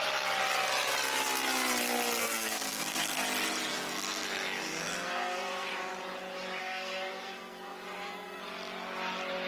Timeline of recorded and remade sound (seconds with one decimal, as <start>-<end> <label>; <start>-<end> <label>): 0.0-2.2 recorded; 2.2-3.2 remade; 3.2-3.7 recorded; 3.7-5.7 remade; 5.7-6.6 recorded; 6.6-8.4 remade; 8.4-9.5 recorded